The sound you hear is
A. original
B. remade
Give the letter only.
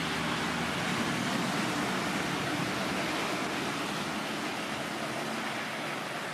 A